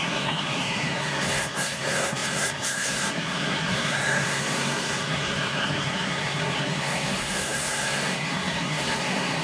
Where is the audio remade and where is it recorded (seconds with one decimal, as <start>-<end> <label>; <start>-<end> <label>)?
0.0-9.4 remade